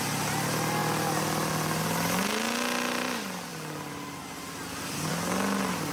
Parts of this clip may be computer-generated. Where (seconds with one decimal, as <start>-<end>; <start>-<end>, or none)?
none